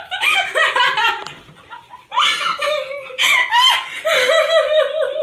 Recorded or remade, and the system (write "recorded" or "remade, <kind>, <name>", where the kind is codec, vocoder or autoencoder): recorded